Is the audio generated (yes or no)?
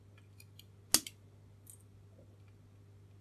no